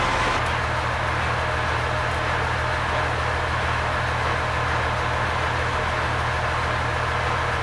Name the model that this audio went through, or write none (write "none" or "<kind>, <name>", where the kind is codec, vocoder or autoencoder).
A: none